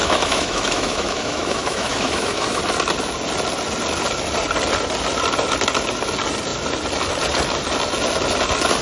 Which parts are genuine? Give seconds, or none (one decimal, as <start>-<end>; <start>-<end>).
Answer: 2.6-8.8